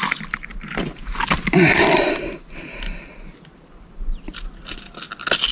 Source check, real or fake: real